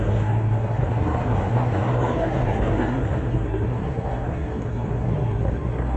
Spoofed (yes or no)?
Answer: yes